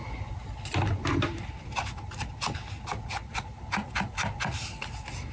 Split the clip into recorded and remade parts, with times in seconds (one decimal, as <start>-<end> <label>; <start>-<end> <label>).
0.0-5.3 recorded